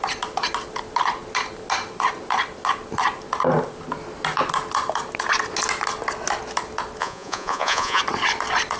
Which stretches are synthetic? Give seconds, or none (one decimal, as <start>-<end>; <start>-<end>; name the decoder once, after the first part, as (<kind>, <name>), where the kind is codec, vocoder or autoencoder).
7.0-8.0 (vocoder, Vocos)